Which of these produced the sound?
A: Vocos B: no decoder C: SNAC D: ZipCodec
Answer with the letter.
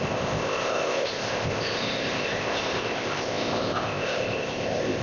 D